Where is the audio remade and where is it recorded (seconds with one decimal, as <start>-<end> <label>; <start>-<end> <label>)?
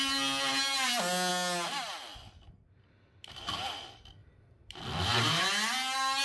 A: 0.0-6.2 recorded